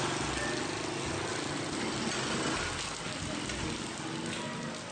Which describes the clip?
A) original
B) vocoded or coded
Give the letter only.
A